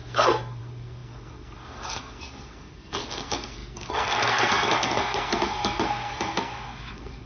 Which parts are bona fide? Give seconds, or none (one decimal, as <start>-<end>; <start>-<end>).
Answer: none